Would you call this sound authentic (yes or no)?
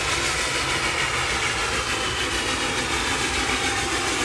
yes